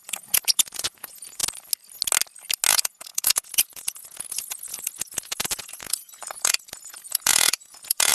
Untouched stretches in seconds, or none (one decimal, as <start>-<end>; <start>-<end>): 1.4-2.7